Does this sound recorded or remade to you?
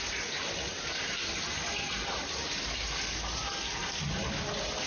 recorded